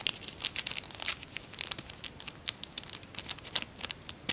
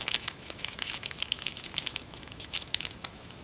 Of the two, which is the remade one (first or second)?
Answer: second